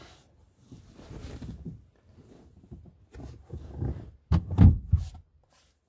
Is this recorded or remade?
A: recorded